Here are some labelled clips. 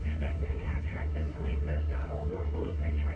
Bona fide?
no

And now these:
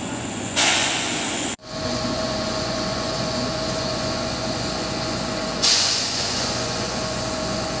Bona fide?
no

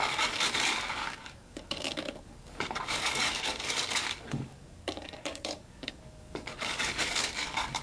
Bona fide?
no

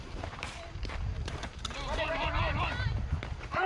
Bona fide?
no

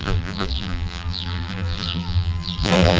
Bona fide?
no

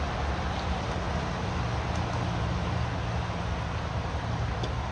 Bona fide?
yes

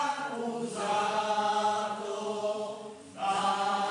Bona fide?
no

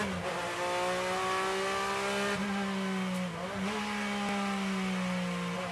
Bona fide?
yes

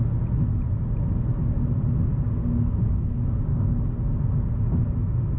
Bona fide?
yes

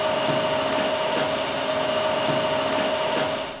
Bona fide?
yes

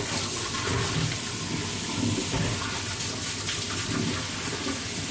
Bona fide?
yes